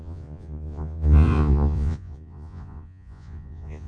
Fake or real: fake